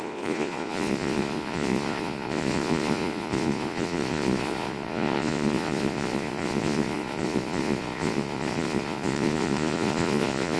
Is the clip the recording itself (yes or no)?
no